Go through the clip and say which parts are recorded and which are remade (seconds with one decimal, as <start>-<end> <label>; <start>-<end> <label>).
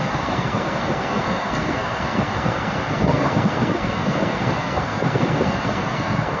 0.0-6.4 remade